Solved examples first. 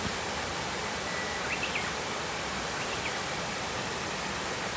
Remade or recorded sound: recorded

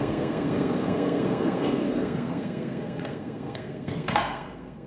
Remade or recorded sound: remade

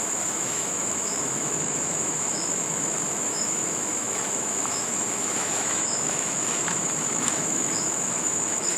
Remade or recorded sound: remade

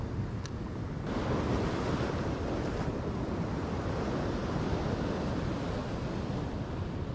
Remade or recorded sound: recorded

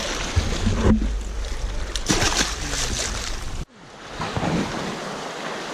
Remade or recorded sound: recorded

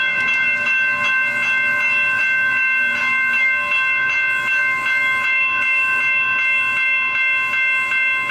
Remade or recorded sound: recorded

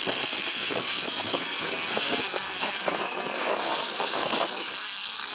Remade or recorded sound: remade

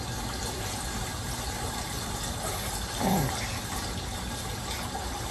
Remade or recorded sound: recorded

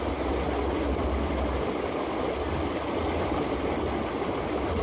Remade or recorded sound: recorded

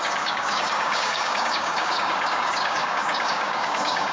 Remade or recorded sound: remade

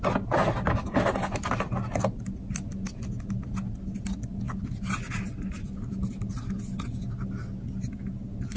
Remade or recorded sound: recorded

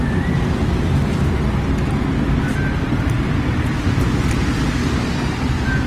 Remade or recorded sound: recorded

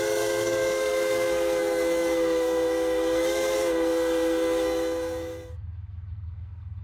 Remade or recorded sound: remade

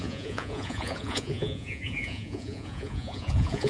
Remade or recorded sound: remade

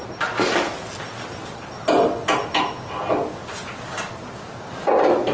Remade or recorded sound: recorded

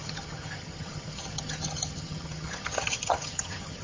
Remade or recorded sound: remade